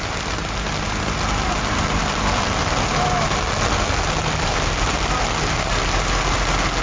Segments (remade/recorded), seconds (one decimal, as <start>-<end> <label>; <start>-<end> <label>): 0.0-6.8 recorded